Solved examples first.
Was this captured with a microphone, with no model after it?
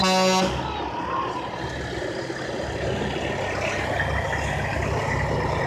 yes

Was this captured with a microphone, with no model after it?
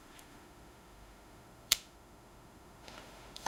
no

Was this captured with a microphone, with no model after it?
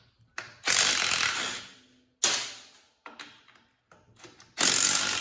yes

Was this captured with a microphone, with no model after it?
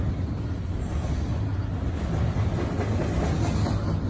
yes